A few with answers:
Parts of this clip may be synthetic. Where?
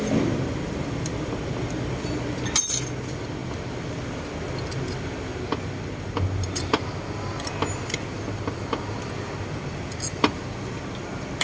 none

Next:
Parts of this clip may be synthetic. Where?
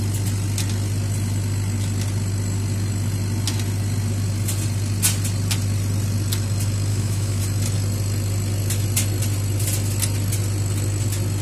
6.9-7.4 (autoencoder, DAC-VAE)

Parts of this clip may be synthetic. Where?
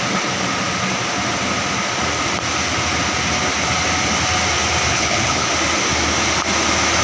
4.9-5.5 (codec, HILCodec)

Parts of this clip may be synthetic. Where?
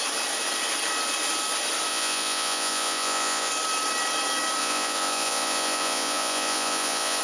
1.9-3.5 (vocoder, Vocos); 4.6-7.2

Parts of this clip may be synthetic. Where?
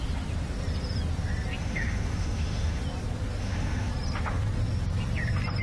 1.6-2.8 (autoencoder, DAC-VAE); 3.4-3.9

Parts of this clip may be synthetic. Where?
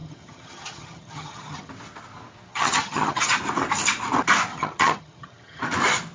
0.0-1.7 (vocoder, HiFi-GAN); 2.5-3.4; 4.5-5.6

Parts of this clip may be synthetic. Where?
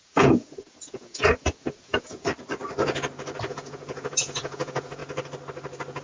0.0-2.3 (vocoder, Vocos); 3.5-5.0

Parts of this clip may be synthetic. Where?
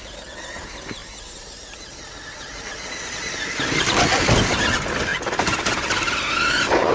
none